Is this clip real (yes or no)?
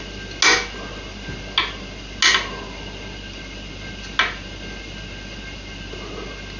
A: yes